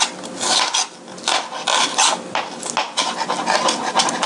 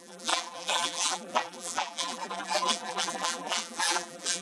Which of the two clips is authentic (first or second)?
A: first